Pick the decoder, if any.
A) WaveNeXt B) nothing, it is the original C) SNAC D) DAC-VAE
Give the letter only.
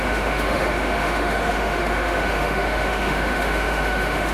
D